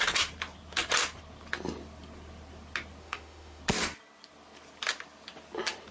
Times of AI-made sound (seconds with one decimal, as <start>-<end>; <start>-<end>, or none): 3.0-3.6